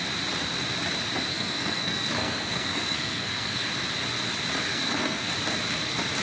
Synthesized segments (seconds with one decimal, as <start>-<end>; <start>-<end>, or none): 1.3-3.7; 4.7-5.3